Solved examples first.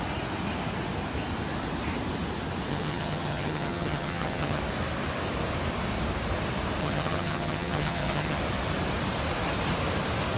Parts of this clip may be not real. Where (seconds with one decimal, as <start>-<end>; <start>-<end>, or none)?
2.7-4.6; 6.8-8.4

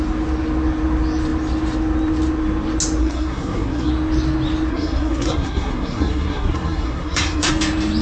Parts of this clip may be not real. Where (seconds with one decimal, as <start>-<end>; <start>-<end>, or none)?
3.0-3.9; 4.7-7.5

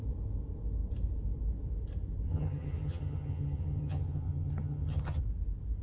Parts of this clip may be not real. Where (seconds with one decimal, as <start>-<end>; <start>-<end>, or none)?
2.3-5.2

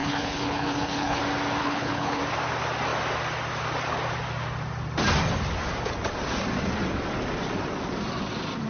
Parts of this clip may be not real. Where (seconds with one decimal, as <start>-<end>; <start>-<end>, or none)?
0.0-1.2; 1.6-2.2